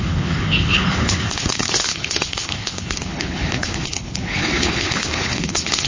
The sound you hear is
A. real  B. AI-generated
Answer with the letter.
B